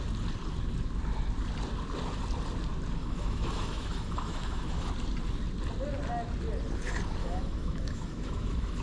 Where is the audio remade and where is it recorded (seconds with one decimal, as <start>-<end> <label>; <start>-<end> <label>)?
0.0-3.0 recorded; 3.0-4.9 remade; 4.9-7.2 recorded; 7.2-8.8 remade